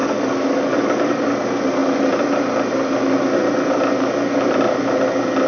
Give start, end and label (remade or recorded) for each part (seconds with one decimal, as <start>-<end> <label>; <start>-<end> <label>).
0.0-1.3 remade; 1.3-5.5 recorded